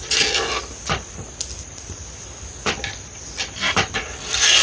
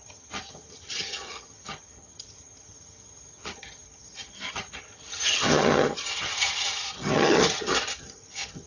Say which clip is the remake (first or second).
second